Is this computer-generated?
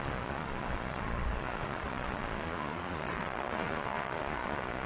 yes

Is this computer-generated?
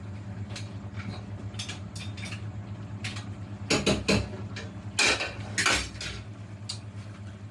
no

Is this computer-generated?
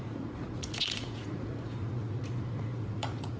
yes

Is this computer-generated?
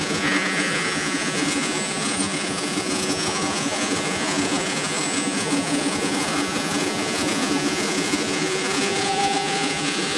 yes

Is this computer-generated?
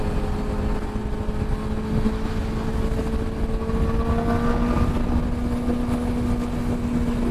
no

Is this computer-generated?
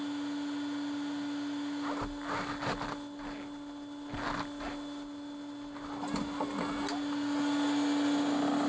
no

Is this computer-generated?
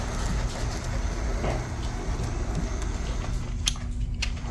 no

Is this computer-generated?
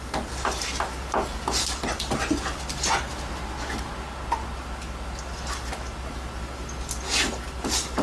no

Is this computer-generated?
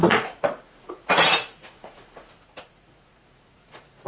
yes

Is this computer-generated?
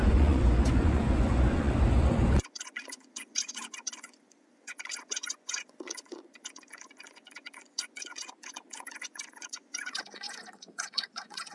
yes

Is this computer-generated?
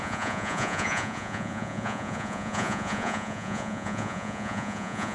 yes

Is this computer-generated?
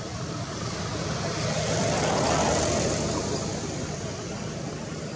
no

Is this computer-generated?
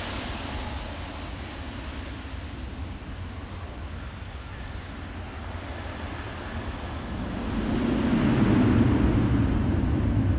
no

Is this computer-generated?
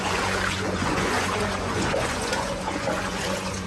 yes